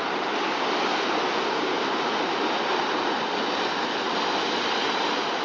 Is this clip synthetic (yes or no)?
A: no